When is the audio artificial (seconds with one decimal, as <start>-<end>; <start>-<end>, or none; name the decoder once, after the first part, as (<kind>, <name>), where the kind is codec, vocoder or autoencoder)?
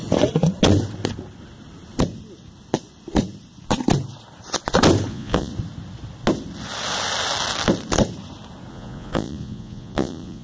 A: 5.1-5.5 (vocoder, Vocos); 8.7-10.4